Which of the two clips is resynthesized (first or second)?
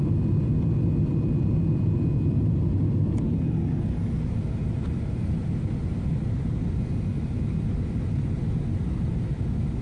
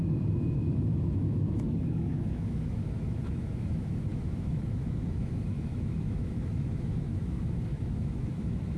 second